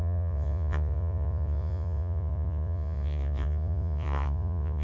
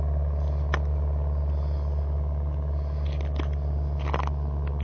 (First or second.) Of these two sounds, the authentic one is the second